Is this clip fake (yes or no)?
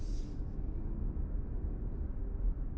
no